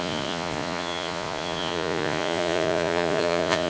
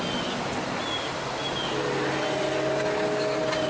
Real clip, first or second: second